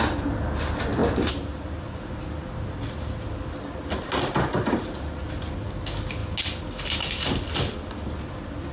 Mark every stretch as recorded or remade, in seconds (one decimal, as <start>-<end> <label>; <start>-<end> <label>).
0.0-8.7 recorded